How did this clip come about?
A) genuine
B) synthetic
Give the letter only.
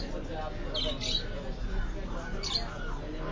A